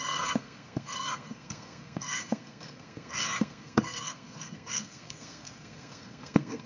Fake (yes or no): yes